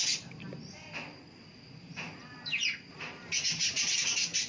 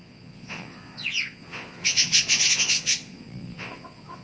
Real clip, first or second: first